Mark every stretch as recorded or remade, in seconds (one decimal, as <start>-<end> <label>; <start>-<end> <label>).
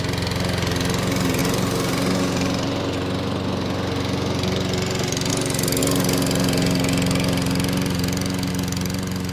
0.0-9.3 recorded